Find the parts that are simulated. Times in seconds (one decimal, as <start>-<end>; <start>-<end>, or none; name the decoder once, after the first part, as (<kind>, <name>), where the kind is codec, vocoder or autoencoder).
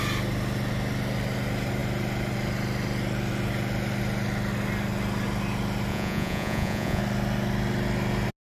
5.9-7.0 (vocoder, Vocos)